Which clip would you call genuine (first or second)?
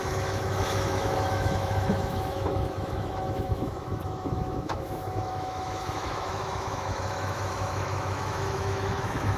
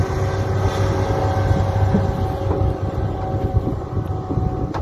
second